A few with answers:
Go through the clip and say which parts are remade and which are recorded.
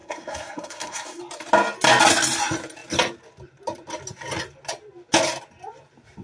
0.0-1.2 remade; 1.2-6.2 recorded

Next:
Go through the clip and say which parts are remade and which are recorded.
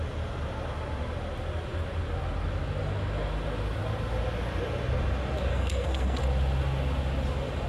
0.0-5.5 recorded; 5.5-6.2 remade; 6.2-7.7 recorded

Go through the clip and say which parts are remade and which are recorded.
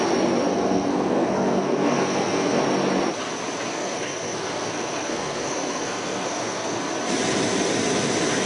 0.0-0.5 recorded; 0.5-2.6 remade; 2.6-3.7 recorded; 3.7-6.8 remade; 6.8-8.5 recorded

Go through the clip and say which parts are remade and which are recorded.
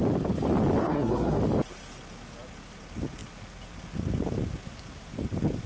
0.0-0.8 recorded; 0.8-1.4 remade; 1.4-5.7 recorded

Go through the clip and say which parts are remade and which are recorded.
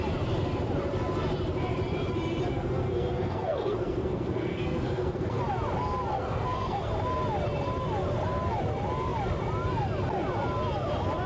0.0-2.5 recorded; 2.5-5.4 remade; 5.4-6.1 recorded; 6.1-6.9 remade; 6.9-11.3 recorded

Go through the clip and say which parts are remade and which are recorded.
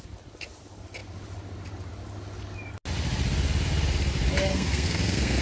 0.0-4.5 recorded; 4.5-5.4 remade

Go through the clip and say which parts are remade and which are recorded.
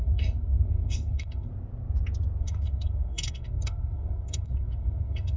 0.0-1.5 remade; 1.5-2.4 recorded; 2.4-5.4 remade